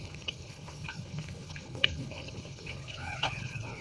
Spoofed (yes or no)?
yes